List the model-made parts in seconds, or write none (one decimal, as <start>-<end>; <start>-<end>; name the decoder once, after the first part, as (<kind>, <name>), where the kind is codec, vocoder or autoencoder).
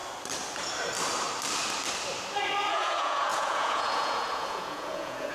2.7-5.3 (vocoder, Vocos)